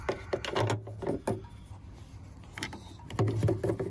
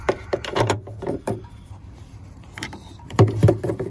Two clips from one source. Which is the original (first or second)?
first